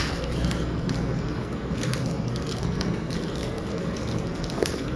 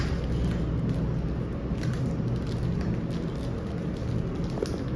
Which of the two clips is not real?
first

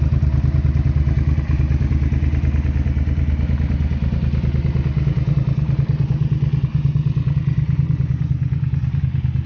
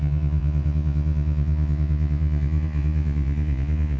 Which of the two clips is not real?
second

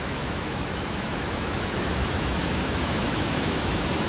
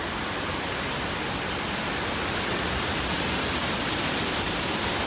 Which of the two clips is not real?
first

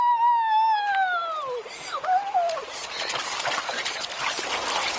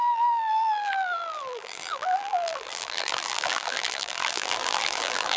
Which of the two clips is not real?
second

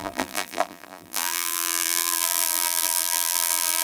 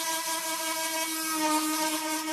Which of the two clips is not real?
first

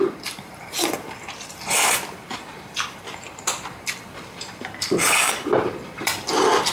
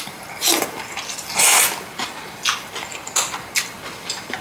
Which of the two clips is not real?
first